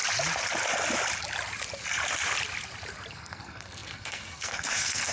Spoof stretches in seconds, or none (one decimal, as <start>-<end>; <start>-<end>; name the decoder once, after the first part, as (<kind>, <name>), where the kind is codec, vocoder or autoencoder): 3.1-5.1 (codec, SNAC)